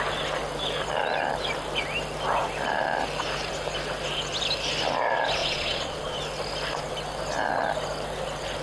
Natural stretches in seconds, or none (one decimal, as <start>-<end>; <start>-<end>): 0.0-5.4; 6.2-8.6